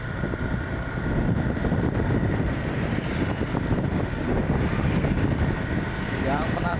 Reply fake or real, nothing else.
fake